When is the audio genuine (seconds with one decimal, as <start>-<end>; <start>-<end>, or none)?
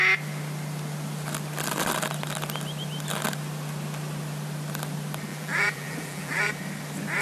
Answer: 0.0-5.3; 6.5-7.2